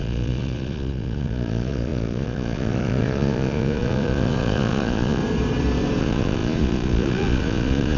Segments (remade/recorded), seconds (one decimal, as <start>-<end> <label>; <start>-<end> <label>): 0.0-5.2 remade; 5.2-6.0 recorded; 6.0-8.0 remade